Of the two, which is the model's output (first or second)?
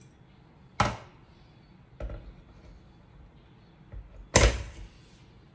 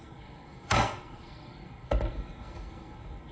second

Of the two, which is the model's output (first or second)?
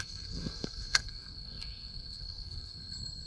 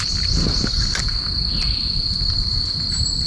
first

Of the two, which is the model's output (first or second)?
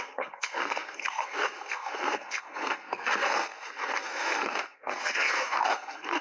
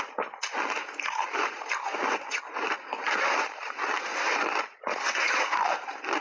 first